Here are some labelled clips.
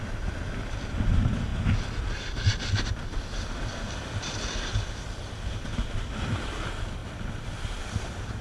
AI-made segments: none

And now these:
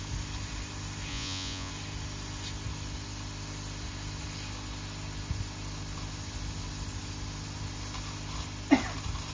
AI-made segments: 1.1-1.7 (vocoder, Vocos)

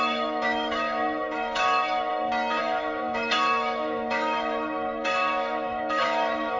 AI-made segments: 0.0-2.1 (autoencoder, DAC-VAE); 2.6-6.6

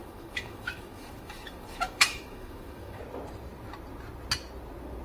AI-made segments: 0.0-3.0 (autoencoder, DAC-VAE)

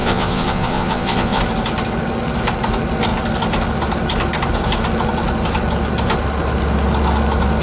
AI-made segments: 0.0-1.4 (vocoder, Vocos)

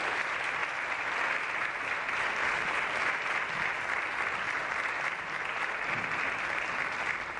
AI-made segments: none

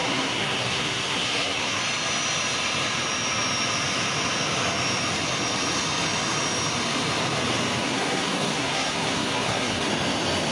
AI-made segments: 0.0-1.8 (codec, SNAC); 7.8-9.9